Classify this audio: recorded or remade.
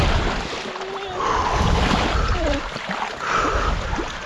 recorded